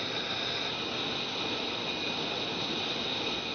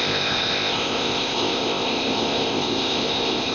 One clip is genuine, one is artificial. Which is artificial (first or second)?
second